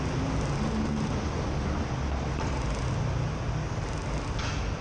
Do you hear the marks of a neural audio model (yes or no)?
no